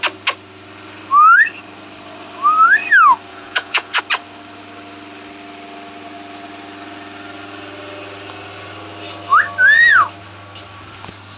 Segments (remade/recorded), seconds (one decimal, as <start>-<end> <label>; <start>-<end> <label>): 0.0-3.3 recorded; 3.3-4.0 remade; 4.0-11.4 recorded